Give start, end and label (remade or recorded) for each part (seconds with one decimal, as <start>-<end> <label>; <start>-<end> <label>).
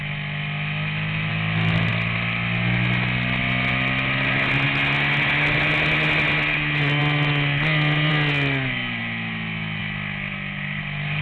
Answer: 0.0-11.2 recorded